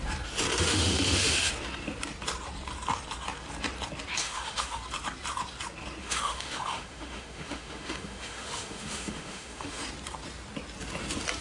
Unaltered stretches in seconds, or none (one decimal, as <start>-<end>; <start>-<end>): 0.0-0.5; 1.5-4.2; 4.8-6.0; 9.8-11.4